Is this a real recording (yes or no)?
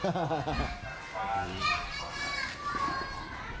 yes